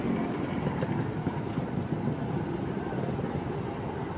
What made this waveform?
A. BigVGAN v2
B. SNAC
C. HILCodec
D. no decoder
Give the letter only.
D